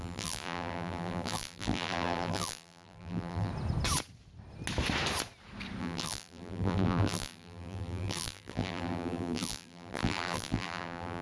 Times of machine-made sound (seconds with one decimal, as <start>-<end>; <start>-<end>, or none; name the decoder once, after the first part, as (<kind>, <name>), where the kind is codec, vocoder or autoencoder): 0.0-3.5 (vocoder, BigVGAN v2); 5.8-11.2